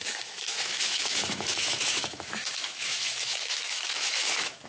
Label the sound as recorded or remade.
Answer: remade